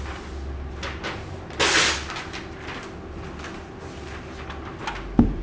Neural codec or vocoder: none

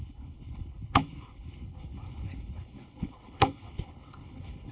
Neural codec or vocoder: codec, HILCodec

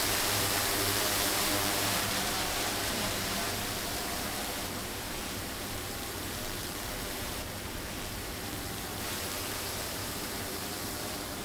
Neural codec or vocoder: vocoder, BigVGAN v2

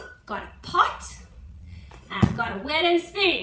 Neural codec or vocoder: vocoder, Vocos